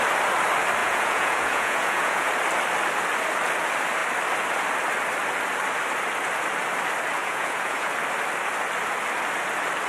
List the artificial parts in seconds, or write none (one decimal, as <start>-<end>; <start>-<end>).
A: 0.8-2.3; 7.2-7.9